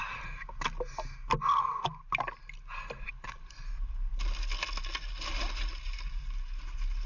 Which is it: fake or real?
real